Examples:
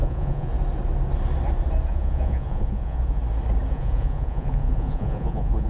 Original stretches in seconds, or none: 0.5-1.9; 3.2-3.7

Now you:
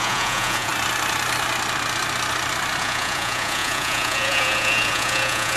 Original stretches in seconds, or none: 0.7-2.8

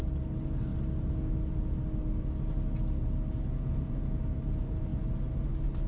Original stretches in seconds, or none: 0.0-5.9

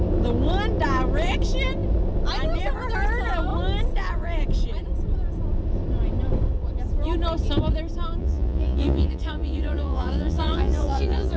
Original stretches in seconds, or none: 0.0-8.2

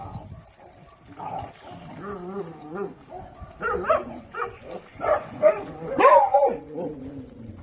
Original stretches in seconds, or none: 0.0-2.4; 3.0-3.9

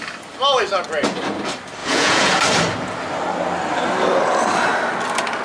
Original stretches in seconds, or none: 0.0-1.8; 2.4-5.4

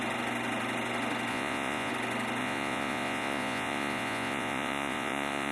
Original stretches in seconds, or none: 0.0-1.3; 1.9-2.4

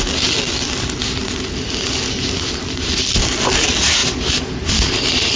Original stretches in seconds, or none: 0.0-5.4